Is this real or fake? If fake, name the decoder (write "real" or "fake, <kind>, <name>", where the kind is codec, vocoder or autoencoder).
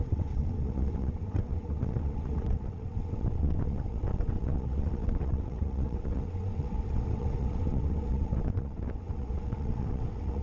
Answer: fake, vocoder, WaveNeXt